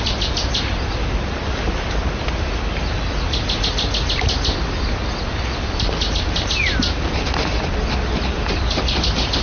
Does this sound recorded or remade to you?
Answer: recorded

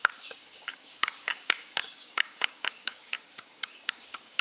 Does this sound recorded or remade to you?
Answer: remade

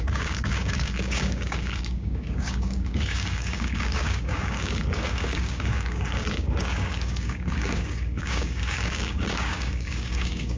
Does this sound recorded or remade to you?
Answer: remade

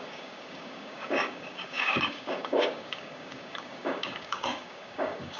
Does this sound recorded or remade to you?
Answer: remade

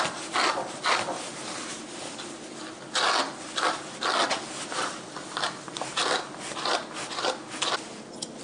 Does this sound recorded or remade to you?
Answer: recorded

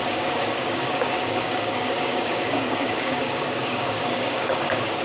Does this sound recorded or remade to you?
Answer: remade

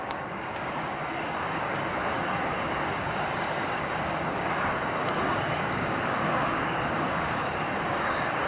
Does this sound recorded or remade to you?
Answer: remade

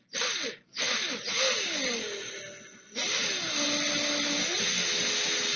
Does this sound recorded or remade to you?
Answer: recorded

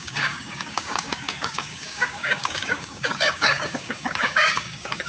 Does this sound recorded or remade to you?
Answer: remade